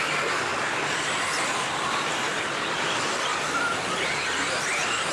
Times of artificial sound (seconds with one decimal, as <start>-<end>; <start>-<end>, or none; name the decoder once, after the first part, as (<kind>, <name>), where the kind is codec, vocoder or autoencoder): 0.5-3.4 (vocoder, BigVGAN v2)